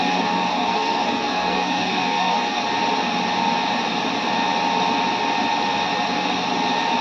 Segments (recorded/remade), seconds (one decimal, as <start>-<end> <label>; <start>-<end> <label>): 0.0-2.6 remade; 2.6-7.0 recorded